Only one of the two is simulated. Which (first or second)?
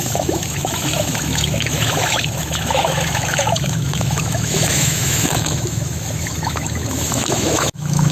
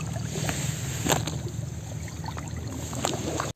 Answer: first